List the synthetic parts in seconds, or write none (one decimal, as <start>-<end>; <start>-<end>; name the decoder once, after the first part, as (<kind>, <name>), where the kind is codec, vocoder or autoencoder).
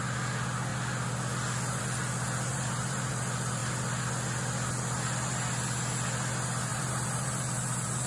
2.5-3.1 (vocoder, BigVGAN v2); 6.7-8.1